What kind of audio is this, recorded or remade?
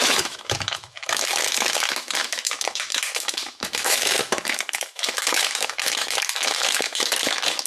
remade